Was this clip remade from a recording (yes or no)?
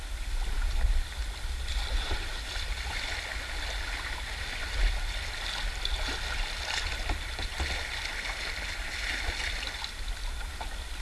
no